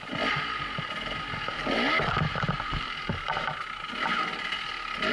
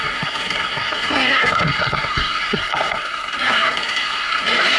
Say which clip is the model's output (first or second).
second